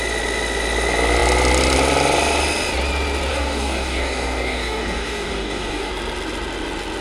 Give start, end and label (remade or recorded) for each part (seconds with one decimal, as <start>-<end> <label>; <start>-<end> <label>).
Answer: 0.0-3.3 recorded; 3.3-5.9 remade; 5.9-7.0 recorded